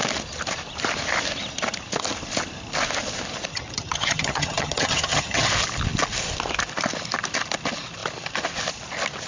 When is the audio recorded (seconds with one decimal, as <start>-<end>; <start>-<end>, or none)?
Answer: 0.0-3.5; 5.5-9.3